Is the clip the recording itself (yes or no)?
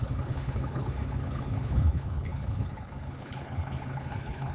no